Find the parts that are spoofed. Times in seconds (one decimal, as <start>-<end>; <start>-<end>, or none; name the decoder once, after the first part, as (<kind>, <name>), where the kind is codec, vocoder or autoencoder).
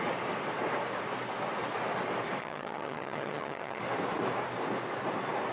2.4-3.8 (vocoder, HiFi-GAN)